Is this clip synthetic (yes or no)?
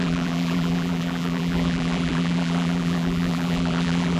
yes